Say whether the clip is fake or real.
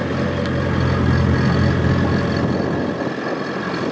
real